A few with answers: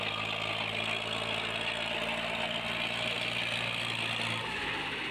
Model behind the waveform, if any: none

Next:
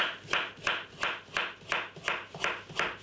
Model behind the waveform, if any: none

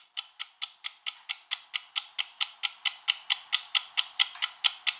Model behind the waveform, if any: none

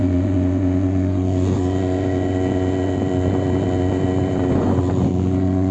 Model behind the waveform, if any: vocoder, Vocos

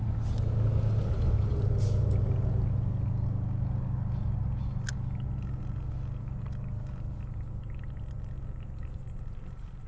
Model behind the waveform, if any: none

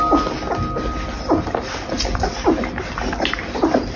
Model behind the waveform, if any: none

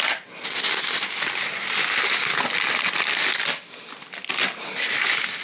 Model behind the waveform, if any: none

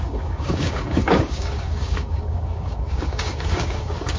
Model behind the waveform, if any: codec, DAC